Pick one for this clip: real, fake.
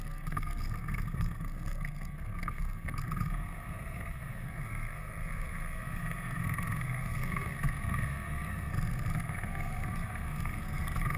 fake